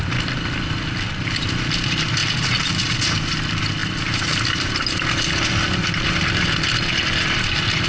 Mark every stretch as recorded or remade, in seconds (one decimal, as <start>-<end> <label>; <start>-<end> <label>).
0.0-7.9 recorded